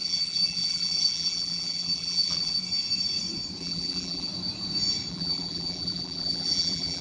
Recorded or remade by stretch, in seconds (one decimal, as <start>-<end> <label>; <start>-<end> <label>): 0.0-2.6 remade; 2.6-3.6 recorded; 3.6-4.3 remade; 4.3-5.1 recorded; 5.1-7.0 remade